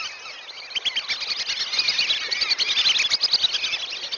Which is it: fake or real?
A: real